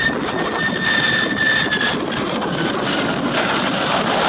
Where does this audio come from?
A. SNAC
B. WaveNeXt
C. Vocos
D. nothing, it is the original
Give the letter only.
D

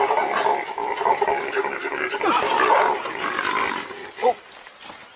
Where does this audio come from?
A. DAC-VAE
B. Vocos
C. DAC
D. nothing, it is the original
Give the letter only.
D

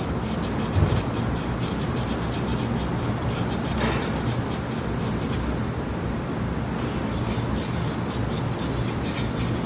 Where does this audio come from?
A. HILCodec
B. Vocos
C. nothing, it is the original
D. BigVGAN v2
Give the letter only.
C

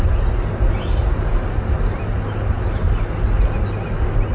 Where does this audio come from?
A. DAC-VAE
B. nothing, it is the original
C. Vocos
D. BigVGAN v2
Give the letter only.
B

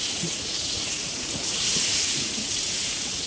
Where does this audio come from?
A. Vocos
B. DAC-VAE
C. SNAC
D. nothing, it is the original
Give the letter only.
A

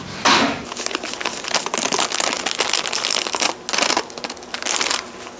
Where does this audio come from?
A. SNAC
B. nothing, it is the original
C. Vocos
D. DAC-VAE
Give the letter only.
B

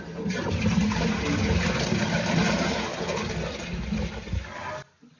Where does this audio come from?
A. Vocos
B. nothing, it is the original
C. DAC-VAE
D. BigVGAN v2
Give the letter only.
B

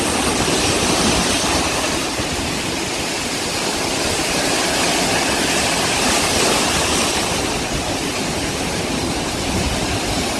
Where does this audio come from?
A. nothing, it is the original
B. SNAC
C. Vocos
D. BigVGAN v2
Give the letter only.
A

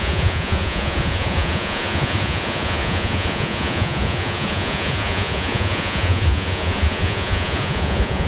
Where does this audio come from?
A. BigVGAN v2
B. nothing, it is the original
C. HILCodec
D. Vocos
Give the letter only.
D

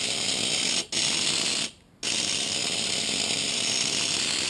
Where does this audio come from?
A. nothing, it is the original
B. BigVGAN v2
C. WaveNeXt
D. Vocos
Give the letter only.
A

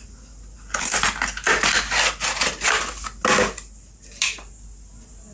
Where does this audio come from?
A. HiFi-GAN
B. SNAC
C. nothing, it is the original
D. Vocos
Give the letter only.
C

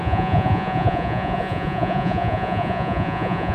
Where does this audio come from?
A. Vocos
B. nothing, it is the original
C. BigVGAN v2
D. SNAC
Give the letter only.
A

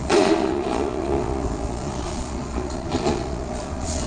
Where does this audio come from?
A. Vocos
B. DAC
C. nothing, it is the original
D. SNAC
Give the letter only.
A